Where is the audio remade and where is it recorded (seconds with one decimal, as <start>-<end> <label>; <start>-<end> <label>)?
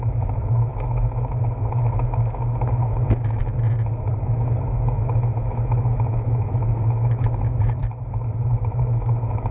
0.0-3.4 remade; 3.4-4.2 recorded; 4.2-7.8 remade; 7.8-8.6 recorded; 8.6-9.5 remade